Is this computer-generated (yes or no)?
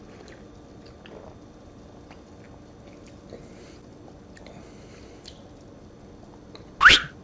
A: no